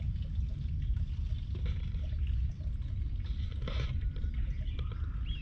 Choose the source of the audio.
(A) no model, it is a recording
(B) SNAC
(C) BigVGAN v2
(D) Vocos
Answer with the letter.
A